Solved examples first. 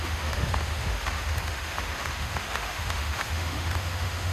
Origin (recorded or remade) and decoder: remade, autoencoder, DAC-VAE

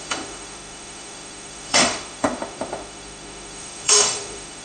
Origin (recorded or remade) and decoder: remade, autoencoder, DAC-VAE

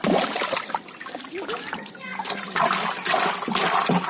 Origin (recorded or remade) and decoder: recorded